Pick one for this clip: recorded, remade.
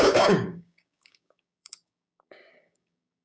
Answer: remade